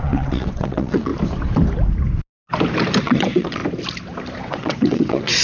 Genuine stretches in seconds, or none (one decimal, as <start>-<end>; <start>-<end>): 1.1-3.0; 3.6-4.4